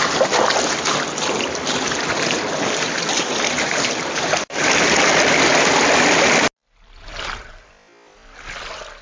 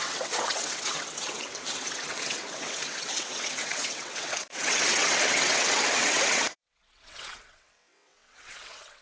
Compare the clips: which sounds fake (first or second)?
second